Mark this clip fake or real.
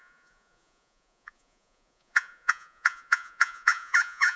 fake